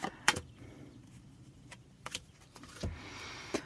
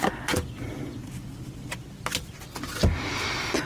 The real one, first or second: second